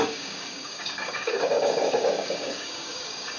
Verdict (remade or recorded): remade